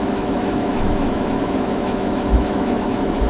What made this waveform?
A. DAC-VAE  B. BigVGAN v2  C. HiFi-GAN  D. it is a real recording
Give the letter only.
A